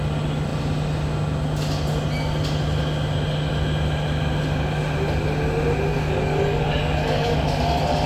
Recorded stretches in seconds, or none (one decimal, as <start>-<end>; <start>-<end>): 0.0-5.9